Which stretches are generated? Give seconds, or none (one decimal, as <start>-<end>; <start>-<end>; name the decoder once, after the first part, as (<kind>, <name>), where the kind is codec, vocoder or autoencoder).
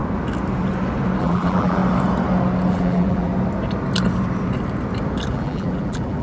1.2-1.8 (vocoder, BigVGAN v2); 2.7-3.3; 5.3-6.2